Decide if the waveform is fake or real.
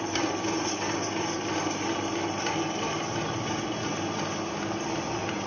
real